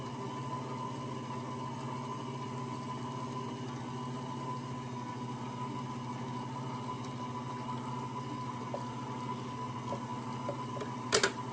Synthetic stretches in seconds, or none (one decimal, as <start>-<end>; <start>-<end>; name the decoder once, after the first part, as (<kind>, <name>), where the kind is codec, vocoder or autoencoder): none